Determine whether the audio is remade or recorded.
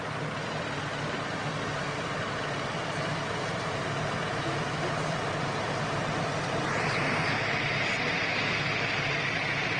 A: recorded